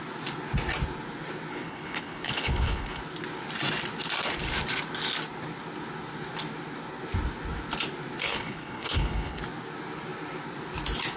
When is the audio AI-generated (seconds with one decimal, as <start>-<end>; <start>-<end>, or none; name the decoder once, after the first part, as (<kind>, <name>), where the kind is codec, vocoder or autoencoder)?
1.5-3.0 (codec, HILCodec); 8.3-9.4